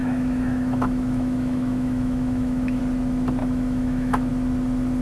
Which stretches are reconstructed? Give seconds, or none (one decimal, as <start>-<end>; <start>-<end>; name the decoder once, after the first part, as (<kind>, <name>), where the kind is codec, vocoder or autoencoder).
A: 0.0-2.8 (autoencoder, DAC-VAE); 3.4-4.3

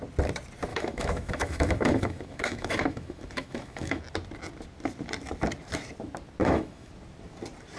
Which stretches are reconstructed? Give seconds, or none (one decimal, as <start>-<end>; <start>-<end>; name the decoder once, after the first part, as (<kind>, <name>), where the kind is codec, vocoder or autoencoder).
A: 0.7-4.0 (autoencoder, DAC-VAE); 6.4-6.9

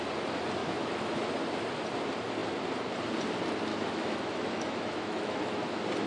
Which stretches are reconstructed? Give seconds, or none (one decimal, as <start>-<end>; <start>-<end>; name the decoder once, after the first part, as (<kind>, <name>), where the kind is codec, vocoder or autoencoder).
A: 0.6-1.2 (autoencoder, DAC-VAE); 3.7-5.4